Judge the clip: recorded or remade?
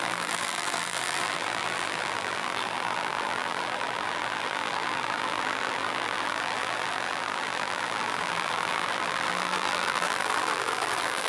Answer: remade